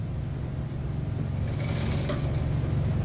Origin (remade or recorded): recorded